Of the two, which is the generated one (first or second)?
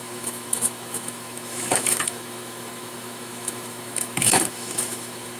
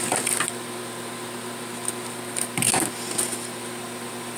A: first